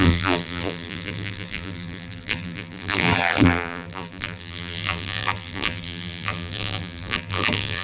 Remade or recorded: remade